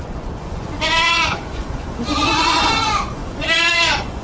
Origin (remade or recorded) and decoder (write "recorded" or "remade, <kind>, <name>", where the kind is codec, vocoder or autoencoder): remade, vocoder, Vocos